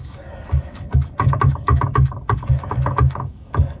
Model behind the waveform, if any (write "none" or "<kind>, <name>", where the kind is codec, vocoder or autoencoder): codec, DAC